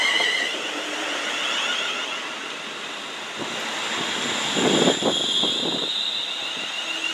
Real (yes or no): yes